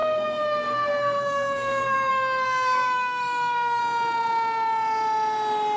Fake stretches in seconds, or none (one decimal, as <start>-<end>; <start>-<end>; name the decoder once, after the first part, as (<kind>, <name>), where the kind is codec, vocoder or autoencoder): 0.0-3.8 (codec, SNAC)